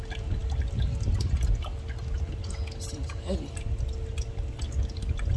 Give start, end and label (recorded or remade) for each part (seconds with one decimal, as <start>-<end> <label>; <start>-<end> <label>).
0.0-5.4 recorded